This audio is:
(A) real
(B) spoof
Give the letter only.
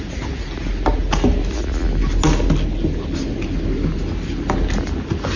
A